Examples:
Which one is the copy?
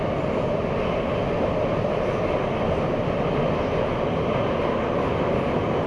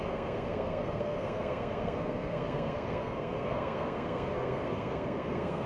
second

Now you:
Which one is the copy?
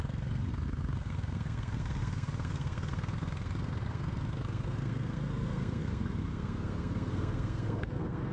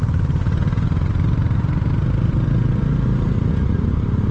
first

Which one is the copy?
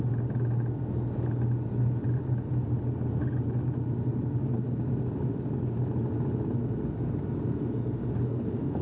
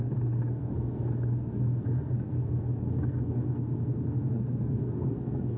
second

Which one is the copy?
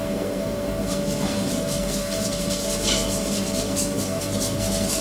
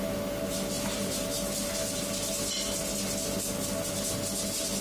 first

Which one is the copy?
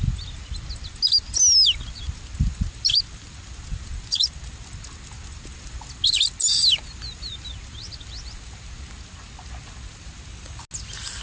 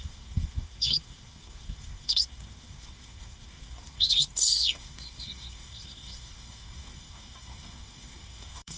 second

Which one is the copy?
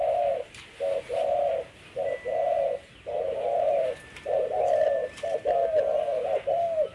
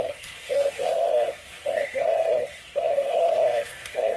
second